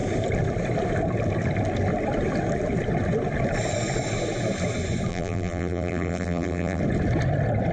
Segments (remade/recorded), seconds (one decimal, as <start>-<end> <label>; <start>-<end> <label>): 0.0-5.1 recorded; 5.1-6.8 remade; 6.8-7.7 recorded